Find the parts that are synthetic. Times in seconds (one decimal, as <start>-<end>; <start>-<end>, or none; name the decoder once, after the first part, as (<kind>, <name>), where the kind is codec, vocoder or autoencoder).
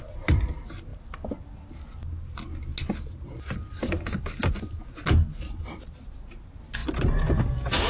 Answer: none